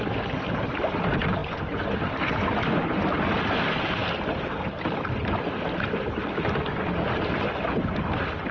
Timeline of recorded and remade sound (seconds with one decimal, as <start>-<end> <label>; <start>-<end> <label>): 0.0-8.5 recorded